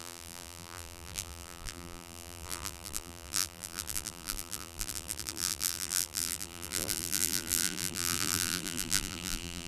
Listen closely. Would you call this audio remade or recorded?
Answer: remade